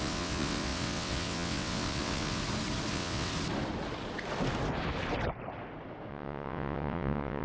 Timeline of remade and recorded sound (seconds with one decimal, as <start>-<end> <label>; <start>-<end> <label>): 0.0-2.4 remade; 2.4-2.9 recorded; 2.9-3.3 remade; 3.3-6.1 recorded; 6.1-7.4 remade